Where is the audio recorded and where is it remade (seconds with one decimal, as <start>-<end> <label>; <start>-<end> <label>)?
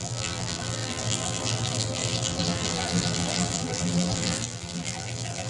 0.0-5.5 remade